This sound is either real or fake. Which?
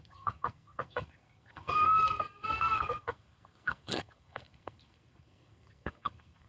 fake